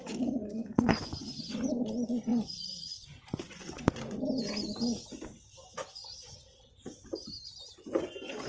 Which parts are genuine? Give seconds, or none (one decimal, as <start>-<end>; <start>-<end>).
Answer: 0.0-0.4; 1.2-2.3; 4.2-8.5